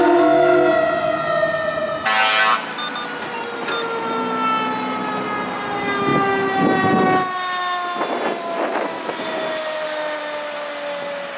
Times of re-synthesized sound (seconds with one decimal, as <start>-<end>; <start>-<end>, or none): none